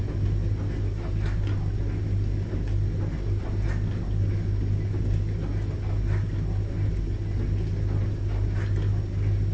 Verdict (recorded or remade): recorded